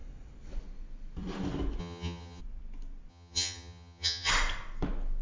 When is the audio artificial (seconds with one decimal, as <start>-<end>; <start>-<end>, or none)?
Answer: 1.8-2.4; 3.1-4.3